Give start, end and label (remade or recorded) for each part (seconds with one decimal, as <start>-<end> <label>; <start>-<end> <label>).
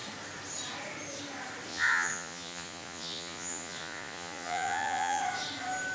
0.0-1.7 recorded; 1.7-5.2 remade; 5.2-5.9 recorded